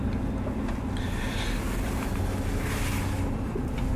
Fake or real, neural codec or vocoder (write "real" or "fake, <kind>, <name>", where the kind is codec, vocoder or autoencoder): real